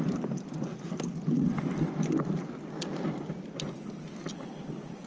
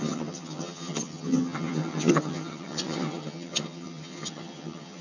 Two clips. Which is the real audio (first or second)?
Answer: first